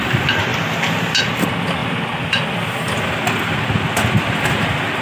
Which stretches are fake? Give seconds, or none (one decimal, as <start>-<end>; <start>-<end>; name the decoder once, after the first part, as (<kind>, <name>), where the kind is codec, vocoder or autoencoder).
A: none